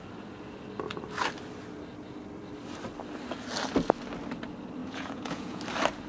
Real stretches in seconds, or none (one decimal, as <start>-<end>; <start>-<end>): 0.0-4.8; 5.6-6.1